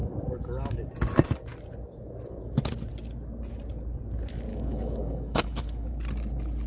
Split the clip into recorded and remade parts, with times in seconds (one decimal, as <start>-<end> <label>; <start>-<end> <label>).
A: 0.0-0.8 remade; 0.8-4.5 recorded; 4.5-5.9 remade; 5.9-6.7 recorded